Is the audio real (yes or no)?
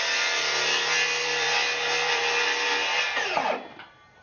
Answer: no